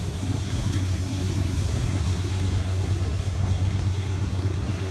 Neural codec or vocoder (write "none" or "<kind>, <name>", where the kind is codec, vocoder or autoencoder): codec, SNAC